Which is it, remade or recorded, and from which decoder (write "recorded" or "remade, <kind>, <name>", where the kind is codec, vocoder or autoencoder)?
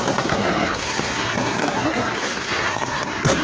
remade, codec, SNAC